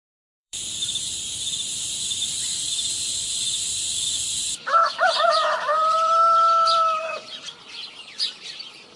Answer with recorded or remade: remade